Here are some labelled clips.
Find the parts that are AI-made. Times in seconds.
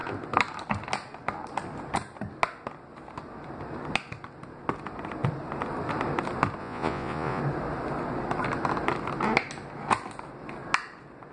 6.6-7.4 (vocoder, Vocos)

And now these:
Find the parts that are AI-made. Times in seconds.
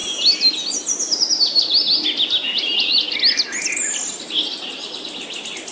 none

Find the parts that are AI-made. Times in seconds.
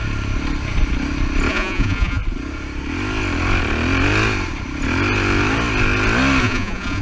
1.5-2.2 (vocoder, Vocos); 6.4-7.0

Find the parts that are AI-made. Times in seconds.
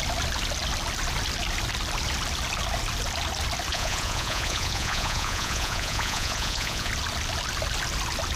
3.7-6.9 (vocoder, Vocos)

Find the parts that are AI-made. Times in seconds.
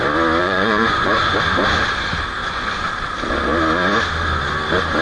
0.4-1.1 (vocoder, Vocos); 2.4-2.9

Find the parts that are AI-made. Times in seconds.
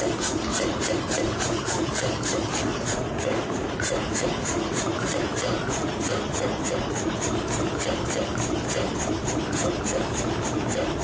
0.5-1.9 (vocoder, Vocos); 2.7-7.2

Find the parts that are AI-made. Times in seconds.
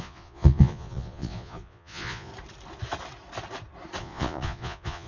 0.0-2.3 (vocoder, Vocos); 4.0-5.1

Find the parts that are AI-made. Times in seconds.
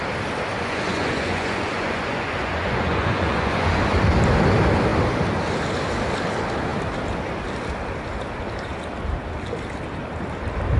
0.5-3.7 (vocoder, Vocos)